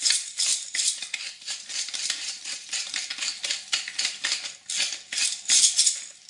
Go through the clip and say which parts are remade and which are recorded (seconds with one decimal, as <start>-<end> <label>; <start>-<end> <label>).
0.0-0.5 remade; 0.5-1.4 recorded; 1.4-3.1 remade; 3.1-6.3 recorded